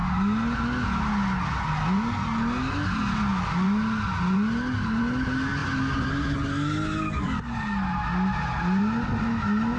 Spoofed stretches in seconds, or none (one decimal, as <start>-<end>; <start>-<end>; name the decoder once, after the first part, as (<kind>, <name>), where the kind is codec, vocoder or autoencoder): none